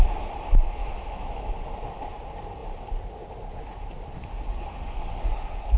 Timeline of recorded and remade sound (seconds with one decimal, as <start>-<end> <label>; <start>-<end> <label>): 0.0-0.8 recorded; 0.8-1.5 remade; 1.5-5.8 recorded